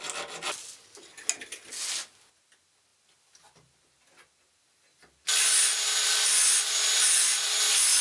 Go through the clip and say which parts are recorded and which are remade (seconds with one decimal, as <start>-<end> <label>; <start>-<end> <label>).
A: 0.0-8.0 recorded